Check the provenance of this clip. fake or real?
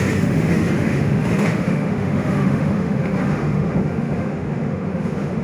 fake